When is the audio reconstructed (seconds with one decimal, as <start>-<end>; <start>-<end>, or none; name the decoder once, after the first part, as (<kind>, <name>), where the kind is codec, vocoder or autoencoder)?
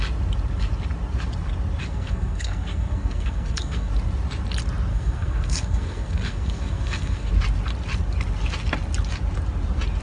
1.8-3.9 (codec, SNAC); 4.9-7.3